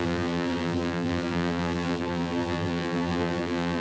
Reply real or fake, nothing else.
fake